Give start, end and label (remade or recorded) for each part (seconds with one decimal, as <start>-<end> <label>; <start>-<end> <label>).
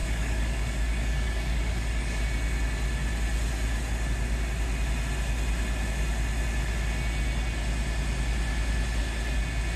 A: 0.0-2.2 remade; 2.2-9.8 recorded